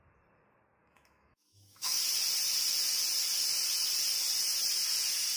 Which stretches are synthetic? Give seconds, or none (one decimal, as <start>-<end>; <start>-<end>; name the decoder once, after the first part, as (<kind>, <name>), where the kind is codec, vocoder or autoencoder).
0.8-2.0 (autoencoder, DAC-VAE)